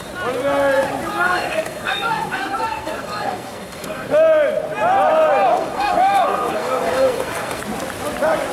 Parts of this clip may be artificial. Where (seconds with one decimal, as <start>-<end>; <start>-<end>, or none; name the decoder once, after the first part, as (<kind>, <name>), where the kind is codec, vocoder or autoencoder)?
1.1-4.1 (codec, SNAC); 5.5-7.6

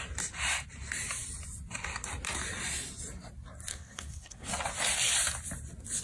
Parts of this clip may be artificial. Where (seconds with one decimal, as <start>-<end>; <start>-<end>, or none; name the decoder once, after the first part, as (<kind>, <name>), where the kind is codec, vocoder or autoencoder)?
3.7-4.5 (codec, SNAC)

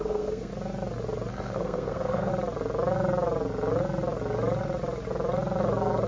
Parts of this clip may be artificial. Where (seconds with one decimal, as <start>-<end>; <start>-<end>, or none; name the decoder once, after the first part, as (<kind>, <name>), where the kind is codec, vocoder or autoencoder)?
0.0-0.5 (codec, SNAC); 1.3-2.3

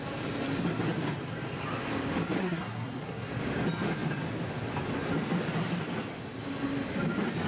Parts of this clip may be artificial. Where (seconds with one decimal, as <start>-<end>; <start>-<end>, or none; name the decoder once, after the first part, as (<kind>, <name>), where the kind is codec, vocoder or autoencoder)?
2.4-3.3 (codec, SNAC)

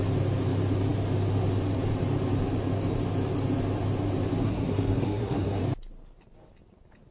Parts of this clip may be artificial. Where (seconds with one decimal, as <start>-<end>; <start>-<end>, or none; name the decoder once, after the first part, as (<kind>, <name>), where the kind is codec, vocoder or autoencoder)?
4.4-5.6 (codec, SNAC)

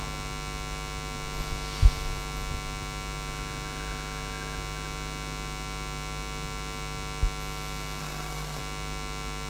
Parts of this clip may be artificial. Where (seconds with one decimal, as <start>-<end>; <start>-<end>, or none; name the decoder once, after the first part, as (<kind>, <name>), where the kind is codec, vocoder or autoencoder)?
8.0-8.6 (codec, SNAC)